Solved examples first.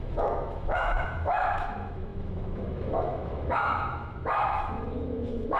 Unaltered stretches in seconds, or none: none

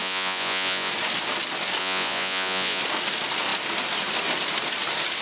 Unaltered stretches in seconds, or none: 0.9-1.8; 2.8-5.2